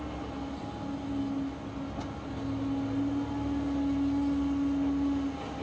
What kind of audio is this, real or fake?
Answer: real